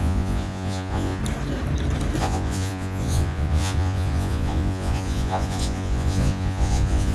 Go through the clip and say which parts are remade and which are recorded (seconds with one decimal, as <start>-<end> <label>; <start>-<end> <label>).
0.0-1.2 remade; 1.2-2.2 recorded; 2.2-7.1 remade